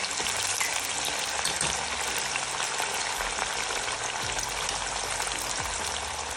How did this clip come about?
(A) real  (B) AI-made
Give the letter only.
A